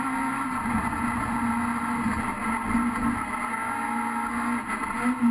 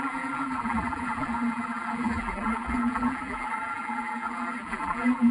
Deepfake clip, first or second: second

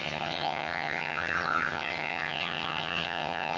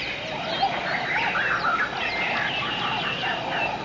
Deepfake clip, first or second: first